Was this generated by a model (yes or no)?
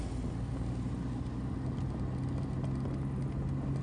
no